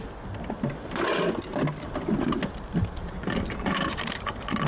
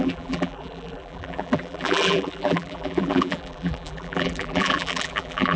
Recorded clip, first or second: first